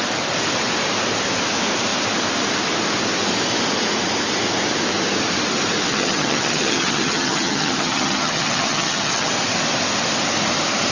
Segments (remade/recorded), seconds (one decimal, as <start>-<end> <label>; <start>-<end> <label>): 0.0-5.9 recorded; 5.9-9.3 remade; 9.3-10.9 recorded